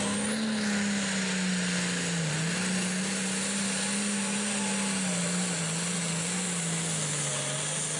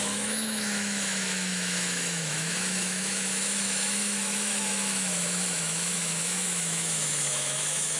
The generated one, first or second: second